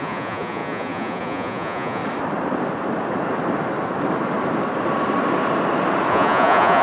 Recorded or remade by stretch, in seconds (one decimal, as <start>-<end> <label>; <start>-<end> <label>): 0.0-2.0 remade; 2.0-6.1 recorded; 6.1-6.8 remade